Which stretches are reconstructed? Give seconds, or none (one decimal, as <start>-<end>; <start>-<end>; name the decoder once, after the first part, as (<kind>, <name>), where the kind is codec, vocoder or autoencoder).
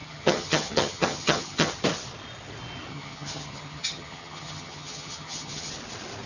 0.0-1.7 (vocoder, HiFi-GAN); 2.9-5.7